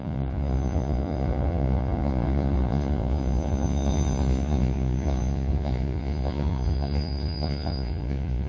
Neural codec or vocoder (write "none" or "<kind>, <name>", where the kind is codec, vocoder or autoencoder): vocoder, Vocos